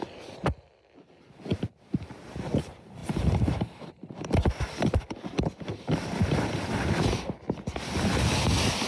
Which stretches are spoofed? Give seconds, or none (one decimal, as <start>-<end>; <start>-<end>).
1.5-2.1